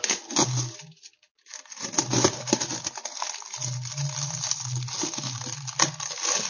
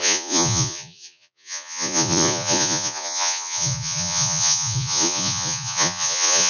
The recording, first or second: first